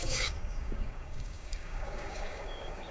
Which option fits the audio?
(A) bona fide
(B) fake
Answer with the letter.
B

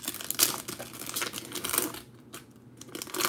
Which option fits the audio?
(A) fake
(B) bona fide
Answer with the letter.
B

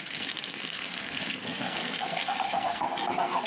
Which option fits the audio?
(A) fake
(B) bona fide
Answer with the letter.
A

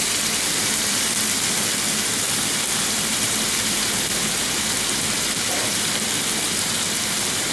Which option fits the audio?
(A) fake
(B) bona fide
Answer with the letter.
A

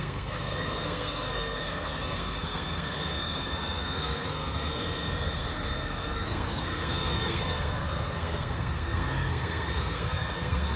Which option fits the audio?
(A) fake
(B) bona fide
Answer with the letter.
A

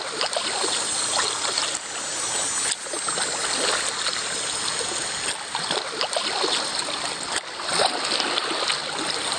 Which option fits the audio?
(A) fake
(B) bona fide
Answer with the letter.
B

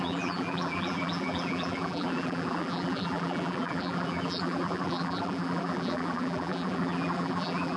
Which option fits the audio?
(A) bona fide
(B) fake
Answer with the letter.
B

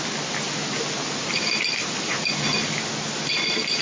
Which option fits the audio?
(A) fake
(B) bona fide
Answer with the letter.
B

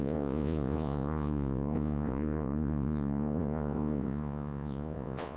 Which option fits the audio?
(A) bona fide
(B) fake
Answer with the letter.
B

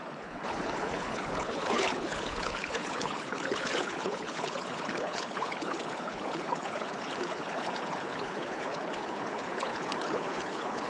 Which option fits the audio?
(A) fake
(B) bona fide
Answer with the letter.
A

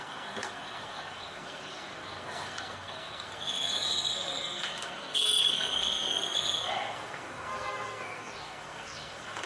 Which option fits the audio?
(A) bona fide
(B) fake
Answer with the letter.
B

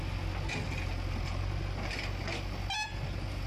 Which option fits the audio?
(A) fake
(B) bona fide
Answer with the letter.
B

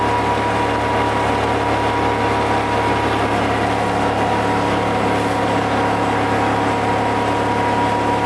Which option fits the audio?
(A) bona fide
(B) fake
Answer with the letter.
A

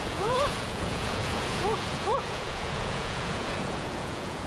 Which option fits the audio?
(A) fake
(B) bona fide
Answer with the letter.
A